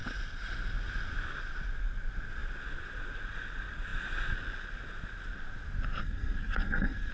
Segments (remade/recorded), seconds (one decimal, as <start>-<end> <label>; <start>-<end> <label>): 0.0-6.0 recorded; 6.0-7.1 remade